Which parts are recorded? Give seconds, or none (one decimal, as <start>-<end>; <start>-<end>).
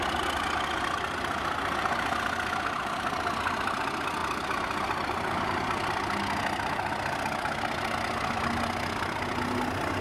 0.0-10.0